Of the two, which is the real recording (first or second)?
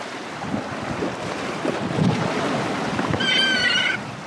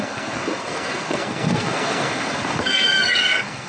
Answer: first